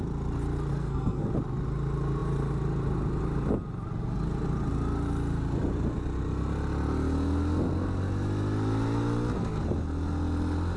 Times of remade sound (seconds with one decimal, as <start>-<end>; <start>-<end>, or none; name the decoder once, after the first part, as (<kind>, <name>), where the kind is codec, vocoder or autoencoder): 0.7-1.3 (codec, SNAC)